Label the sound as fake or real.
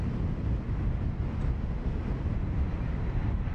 real